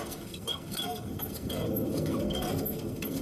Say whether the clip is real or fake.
fake